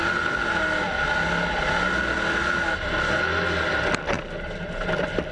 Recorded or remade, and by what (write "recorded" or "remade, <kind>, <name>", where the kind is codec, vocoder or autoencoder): recorded